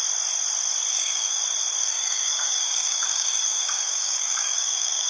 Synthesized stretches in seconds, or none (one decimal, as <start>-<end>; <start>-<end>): 0.9-1.4; 1.8-5.1